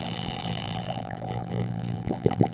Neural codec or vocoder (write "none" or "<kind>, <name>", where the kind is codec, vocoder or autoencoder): vocoder, BigVGAN v2